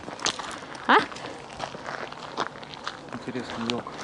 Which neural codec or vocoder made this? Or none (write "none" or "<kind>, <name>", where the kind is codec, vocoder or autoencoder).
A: none